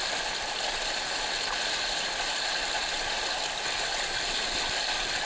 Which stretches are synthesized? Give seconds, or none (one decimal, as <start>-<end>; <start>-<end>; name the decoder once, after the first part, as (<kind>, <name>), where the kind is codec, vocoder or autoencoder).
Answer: none

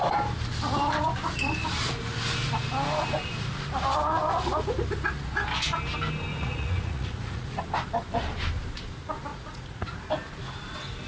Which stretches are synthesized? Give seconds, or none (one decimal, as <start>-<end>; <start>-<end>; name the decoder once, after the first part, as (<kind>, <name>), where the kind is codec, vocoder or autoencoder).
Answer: 6.3-7.6 (vocoder, Vocos); 9.3-10.0